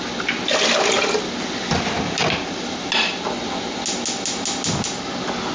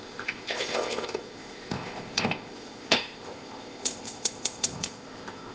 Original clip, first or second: first